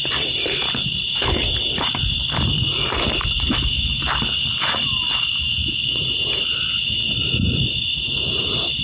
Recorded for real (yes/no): no